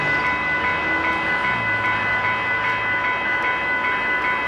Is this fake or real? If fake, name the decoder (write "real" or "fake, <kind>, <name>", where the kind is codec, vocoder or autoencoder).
real